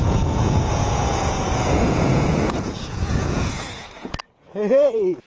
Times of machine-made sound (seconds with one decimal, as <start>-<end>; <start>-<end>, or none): 0.0-5.3